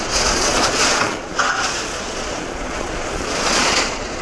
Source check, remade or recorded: remade